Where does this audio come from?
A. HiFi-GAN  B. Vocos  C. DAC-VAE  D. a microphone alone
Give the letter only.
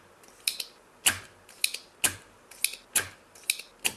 D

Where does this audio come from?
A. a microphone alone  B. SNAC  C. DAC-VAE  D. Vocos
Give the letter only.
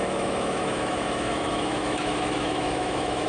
C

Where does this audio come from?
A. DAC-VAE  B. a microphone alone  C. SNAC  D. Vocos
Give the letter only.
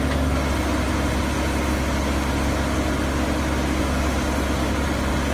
B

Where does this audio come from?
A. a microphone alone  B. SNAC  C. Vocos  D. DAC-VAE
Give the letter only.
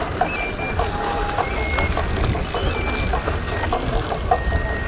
A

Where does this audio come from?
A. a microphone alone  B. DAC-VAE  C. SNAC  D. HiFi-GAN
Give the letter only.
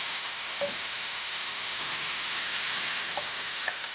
B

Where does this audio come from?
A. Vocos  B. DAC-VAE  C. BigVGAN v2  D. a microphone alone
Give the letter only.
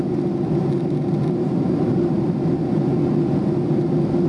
D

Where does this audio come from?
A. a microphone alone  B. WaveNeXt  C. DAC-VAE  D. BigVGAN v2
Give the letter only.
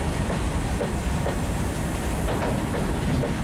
A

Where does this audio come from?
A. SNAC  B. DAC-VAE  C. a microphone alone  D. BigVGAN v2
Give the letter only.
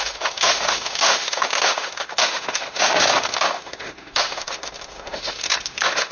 B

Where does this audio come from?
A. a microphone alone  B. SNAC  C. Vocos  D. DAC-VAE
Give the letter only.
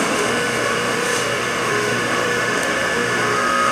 D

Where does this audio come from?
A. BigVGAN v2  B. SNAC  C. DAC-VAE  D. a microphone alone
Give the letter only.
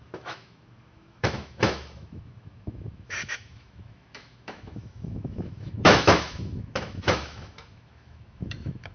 C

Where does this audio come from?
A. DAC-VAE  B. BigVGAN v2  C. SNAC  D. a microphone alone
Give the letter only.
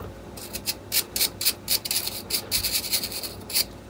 D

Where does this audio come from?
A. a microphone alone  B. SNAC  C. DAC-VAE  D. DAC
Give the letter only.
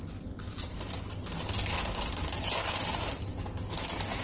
A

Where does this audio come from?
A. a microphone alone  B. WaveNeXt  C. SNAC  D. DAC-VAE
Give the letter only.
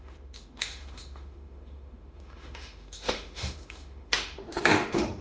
D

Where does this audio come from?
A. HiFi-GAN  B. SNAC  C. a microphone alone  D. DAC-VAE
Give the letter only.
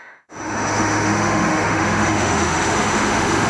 D